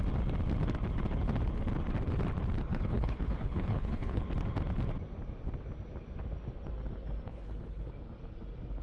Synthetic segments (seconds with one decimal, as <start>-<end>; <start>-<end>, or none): 2.7-4.2; 7.3-7.9